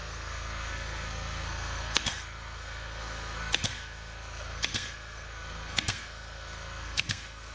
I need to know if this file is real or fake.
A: fake